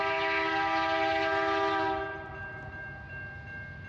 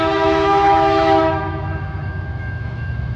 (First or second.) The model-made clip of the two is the second